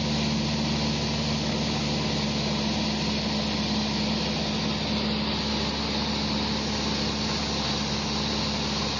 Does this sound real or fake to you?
real